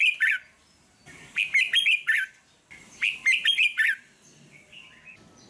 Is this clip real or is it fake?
real